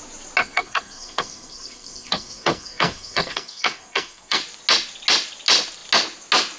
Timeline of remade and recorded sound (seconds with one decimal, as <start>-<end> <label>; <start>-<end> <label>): 0.0-0.4 recorded; 0.4-4.4 remade; 4.4-6.6 recorded